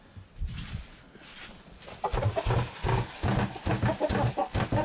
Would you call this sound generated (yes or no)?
no